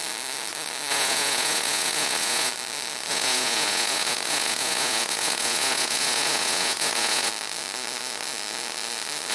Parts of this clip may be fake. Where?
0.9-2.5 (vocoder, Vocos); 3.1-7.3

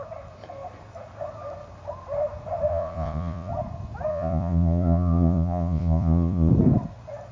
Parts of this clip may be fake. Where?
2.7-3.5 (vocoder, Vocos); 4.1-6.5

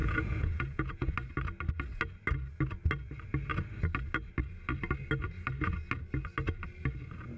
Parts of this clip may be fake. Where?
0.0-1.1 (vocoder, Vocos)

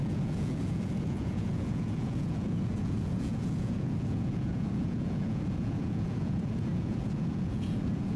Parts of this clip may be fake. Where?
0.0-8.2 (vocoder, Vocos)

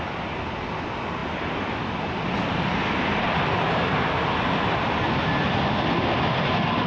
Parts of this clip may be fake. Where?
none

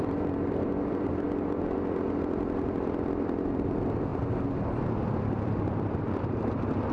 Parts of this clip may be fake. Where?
0.0-4.1 (vocoder, BigVGAN v2); 5.1-6.9

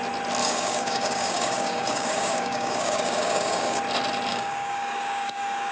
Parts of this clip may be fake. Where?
0.4-3.8 (codec, DAC); 4.3-5.7

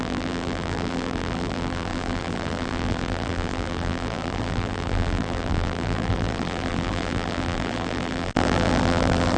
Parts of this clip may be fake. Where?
0.0-9.4 (vocoder, BigVGAN v2)